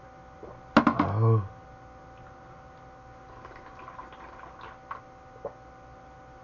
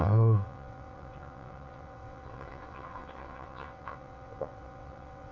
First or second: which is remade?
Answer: second